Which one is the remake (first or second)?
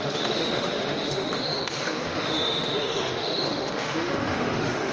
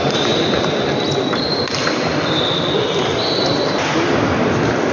first